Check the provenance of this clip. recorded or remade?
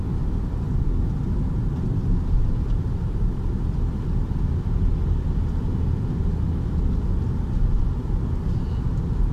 recorded